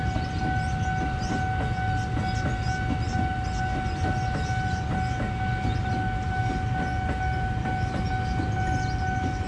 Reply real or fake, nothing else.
real